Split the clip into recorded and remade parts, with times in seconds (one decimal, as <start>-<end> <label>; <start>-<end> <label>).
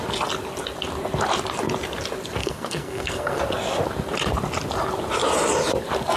0.0-2.4 recorded; 2.4-3.4 remade; 3.4-6.2 recorded